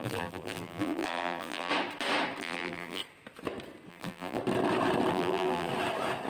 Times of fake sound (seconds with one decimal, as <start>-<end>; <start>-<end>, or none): 0.0-1.7; 2.4-3.0; 3.9-4.4; 5.1-5.7